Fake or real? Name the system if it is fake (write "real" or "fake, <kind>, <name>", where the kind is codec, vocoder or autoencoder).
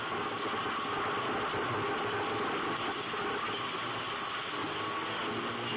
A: real